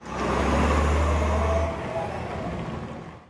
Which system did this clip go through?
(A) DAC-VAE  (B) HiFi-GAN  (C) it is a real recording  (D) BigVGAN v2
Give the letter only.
C